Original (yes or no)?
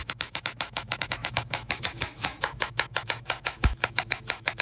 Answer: no